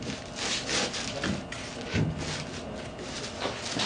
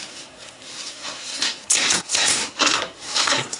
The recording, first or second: first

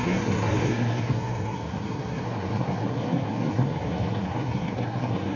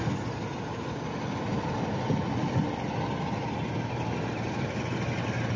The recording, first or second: second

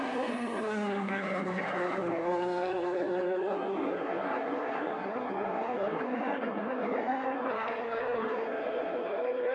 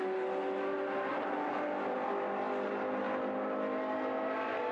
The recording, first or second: second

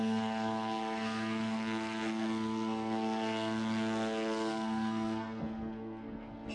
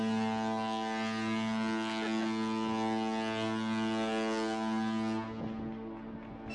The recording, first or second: second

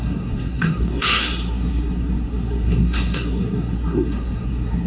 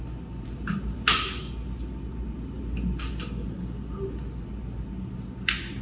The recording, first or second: second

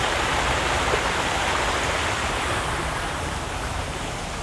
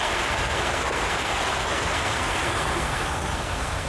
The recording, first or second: first